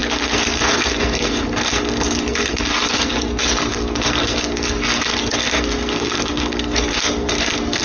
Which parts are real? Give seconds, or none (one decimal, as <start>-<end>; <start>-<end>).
none